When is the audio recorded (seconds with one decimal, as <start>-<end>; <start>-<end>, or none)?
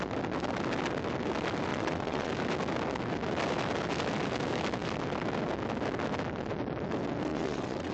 0.0-1.7; 2.3-7.3